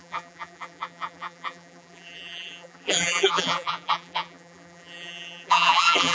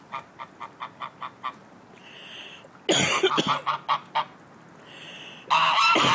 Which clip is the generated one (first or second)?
first